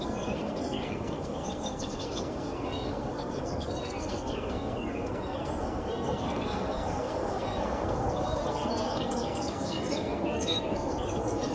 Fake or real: fake